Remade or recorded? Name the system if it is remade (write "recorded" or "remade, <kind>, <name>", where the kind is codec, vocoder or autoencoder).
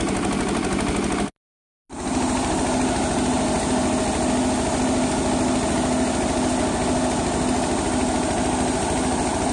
recorded